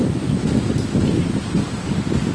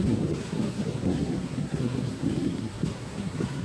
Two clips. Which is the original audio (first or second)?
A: first